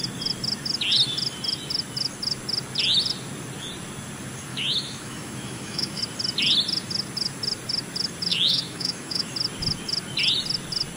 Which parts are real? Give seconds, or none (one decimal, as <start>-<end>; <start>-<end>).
0.0-4.5; 6.0-8.3; 9.3-11.0